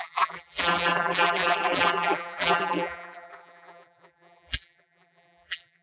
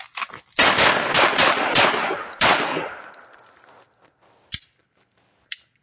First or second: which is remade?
first